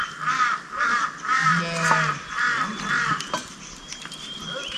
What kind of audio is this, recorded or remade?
recorded